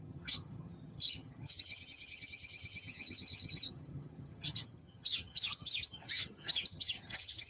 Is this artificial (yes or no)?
yes